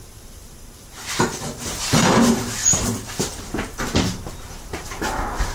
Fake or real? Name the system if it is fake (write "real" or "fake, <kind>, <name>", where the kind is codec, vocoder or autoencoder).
fake, vocoder, BigVGAN v2